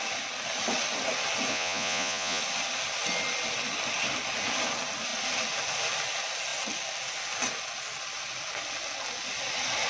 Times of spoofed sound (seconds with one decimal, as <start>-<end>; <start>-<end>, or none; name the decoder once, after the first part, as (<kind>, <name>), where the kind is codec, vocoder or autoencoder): 1.5-2.4 (vocoder, Vocos)